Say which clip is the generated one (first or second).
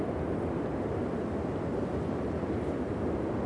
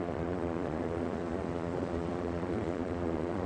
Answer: second